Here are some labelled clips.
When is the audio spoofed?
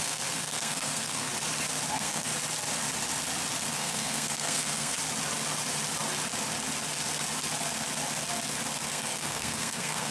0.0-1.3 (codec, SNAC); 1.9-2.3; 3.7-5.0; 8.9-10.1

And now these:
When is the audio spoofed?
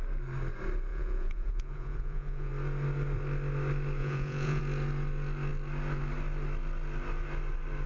0.9-2.5 (vocoder, Vocos); 4.0-4.6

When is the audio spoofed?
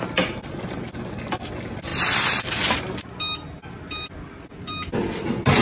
1.9-2.8 (vocoder, BigVGAN v2)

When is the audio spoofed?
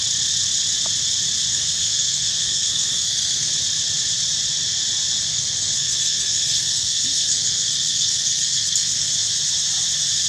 1.5-3.5 (codec, SNAC); 5.3-9.1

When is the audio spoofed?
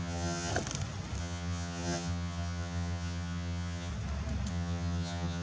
0.0-0.5 (vocoder, HiFi-GAN); 1.2-3.9; 4.5-5.4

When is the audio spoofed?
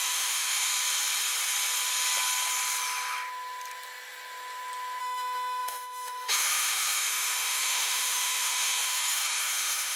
0.0-0.7 (autoencoder, DAC-VAE); 5.0-10.0